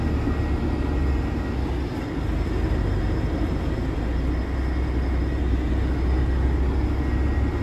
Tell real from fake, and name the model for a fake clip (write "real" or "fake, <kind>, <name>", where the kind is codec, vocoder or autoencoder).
real